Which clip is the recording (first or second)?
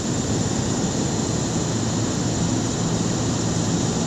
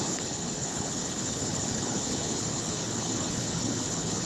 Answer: first